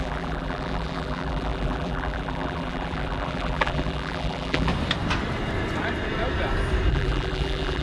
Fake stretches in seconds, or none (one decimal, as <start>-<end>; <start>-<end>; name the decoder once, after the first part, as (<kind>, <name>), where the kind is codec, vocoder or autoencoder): 0.0-4.7 (vocoder, BigVGAN v2); 6.9-7.8